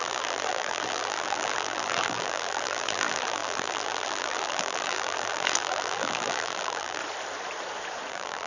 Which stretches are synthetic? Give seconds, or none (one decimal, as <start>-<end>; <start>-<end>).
0.0-7.0; 8.1-8.5